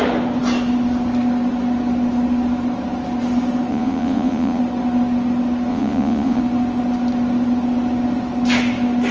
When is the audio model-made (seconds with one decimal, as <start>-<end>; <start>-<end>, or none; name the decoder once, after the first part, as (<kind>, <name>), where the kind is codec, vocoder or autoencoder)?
3.7-4.6 (vocoder, Vocos); 5.7-6.4